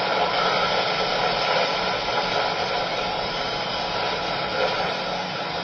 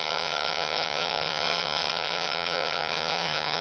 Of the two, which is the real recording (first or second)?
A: first